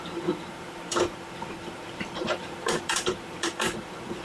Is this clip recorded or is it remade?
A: remade